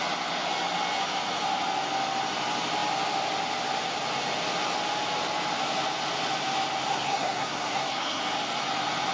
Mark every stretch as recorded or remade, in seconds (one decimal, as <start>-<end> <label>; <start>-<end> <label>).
0.0-6.9 recorded; 6.9-8.2 remade; 8.2-9.1 recorded